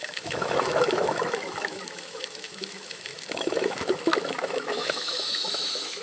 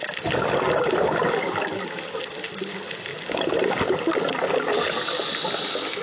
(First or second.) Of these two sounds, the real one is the second